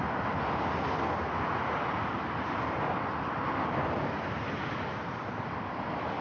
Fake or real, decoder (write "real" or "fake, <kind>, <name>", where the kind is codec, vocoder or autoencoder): real